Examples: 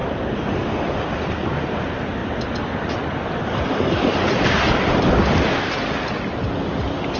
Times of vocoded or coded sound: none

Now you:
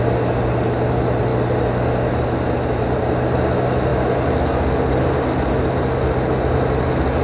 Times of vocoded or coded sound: none

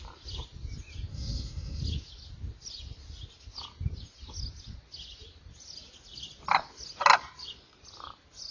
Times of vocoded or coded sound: 1.1-1.8 (autoencoder, DAC-VAE)

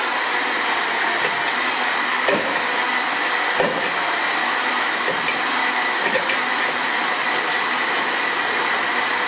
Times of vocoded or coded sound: 2.1-2.7 (autoencoder, DAC-VAE); 4.4-5.0; 5.6-6.3

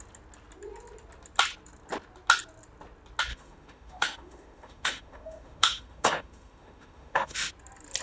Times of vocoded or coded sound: 3.3-7.5 (autoencoder, DAC-VAE)

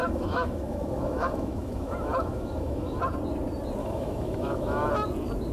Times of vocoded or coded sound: 0.0-3.0 (autoencoder, DAC-VAE); 3.8-4.9

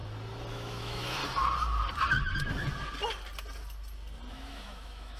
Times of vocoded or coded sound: 0.5-1.2 (autoencoder, DAC-VAE); 4.3-5.2